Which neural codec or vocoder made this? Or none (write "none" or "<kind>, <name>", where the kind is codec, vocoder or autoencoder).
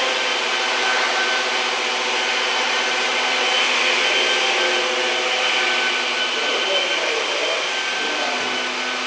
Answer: none